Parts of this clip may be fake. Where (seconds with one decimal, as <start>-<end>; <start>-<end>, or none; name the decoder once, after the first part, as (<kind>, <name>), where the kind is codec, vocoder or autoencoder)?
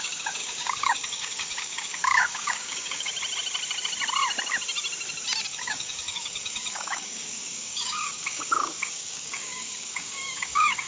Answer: 0.0-3.1 (codec, DAC); 5.5-10.9